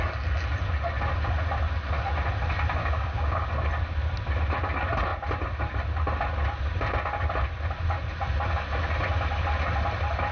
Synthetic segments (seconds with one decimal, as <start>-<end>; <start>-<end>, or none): 2.8-3.5